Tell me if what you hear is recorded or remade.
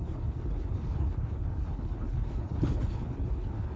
remade